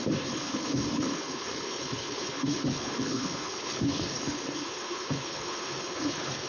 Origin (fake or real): fake